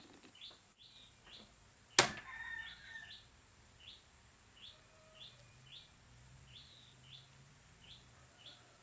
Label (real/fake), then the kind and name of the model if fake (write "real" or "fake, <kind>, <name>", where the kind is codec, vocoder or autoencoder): real